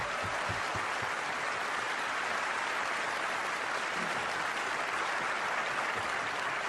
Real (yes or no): yes